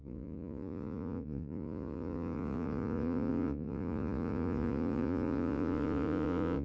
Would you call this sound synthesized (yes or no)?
yes